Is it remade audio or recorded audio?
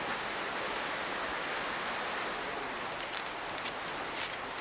recorded